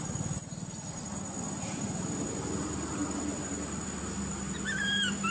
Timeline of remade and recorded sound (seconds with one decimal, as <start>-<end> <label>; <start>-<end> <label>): 0.0-5.3 recorded